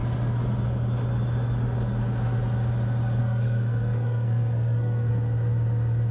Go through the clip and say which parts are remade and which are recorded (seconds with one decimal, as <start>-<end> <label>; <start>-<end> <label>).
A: 0.0-3.2 recorded; 3.2-5.1 remade; 5.1-6.1 recorded